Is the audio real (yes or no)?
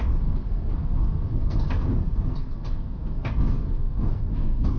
no